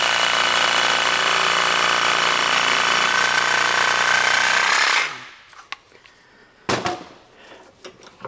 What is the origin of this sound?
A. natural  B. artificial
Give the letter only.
A